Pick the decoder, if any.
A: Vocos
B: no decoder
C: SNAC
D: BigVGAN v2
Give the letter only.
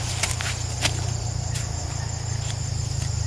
B